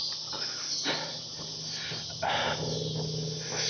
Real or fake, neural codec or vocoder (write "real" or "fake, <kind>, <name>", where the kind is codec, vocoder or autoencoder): real